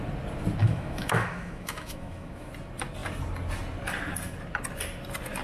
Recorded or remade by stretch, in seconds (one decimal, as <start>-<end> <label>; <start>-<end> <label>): 0.0-0.6 recorded; 0.6-2.5 remade; 2.5-5.4 recorded